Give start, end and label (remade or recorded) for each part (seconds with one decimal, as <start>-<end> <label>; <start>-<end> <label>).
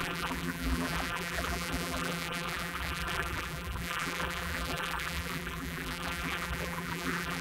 0.0-7.4 remade